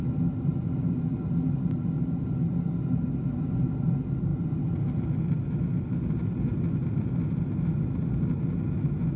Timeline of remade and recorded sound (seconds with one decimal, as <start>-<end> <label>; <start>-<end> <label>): 0.0-9.2 recorded